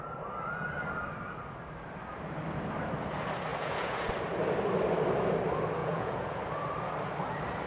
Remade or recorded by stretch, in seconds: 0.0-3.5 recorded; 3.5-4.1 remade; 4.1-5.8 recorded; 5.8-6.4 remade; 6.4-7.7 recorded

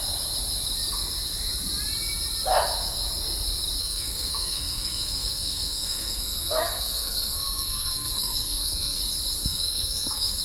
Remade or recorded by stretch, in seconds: 0.0-3.8 recorded; 3.8-9.0 remade; 9.0-9.4 recorded; 9.4-10.4 remade

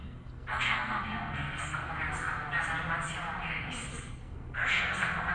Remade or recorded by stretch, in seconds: 0.0-1.9 remade; 1.9-3.9 recorded; 3.9-5.3 remade

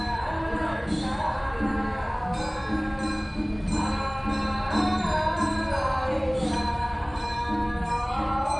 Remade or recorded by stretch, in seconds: 0.0-1.7 remade; 1.7-6.4 recorded; 6.4-8.6 remade

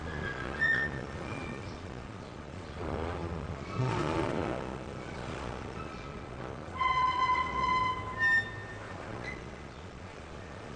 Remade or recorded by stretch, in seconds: 0.0-7.7 remade; 7.7-8.9 recorded; 8.9-10.8 remade

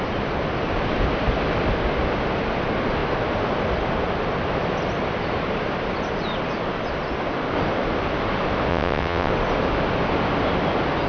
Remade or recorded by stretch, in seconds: 0.0-8.7 recorded; 8.7-9.3 remade; 9.3-11.1 recorded